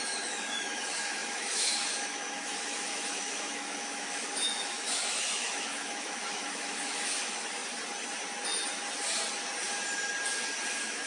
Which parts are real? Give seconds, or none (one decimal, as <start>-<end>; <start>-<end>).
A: 7.6-10.7